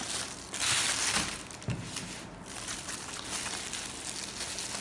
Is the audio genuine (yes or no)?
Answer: yes